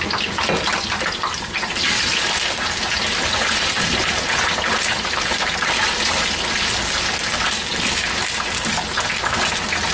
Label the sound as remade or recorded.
recorded